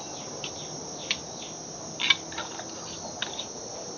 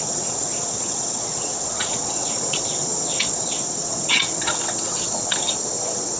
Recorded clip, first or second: first